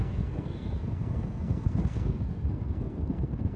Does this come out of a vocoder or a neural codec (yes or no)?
yes